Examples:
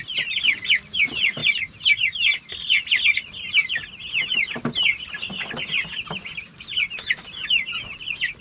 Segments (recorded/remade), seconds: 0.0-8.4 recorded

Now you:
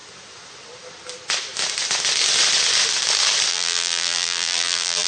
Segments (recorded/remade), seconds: 0.0-3.5 recorded; 3.5-5.1 remade